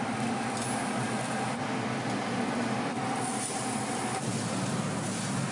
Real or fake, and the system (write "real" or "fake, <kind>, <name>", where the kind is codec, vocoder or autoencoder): real